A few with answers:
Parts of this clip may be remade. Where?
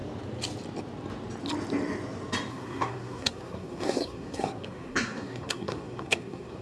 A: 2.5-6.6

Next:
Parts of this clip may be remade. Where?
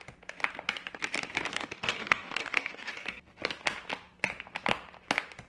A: 1.5-2.9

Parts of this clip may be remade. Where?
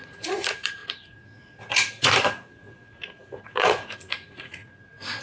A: 0.0-5.2